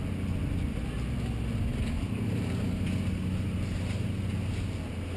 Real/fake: real